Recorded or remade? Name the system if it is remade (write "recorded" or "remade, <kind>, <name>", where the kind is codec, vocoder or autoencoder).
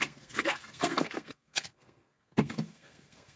remade, codec, SNAC